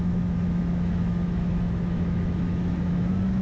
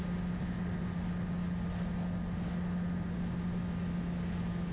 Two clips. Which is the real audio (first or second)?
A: second